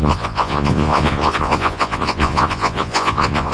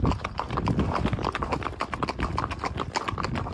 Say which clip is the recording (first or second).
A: second